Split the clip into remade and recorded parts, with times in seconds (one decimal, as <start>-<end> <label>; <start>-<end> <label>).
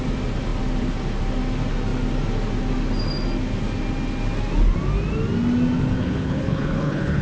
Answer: 0.0-6.0 recorded; 6.0-7.2 remade